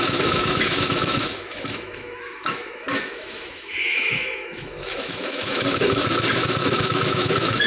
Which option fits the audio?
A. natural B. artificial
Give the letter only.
B